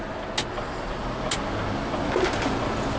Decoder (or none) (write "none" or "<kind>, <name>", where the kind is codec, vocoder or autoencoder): none